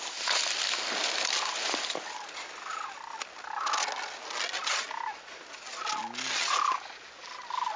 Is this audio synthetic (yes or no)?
no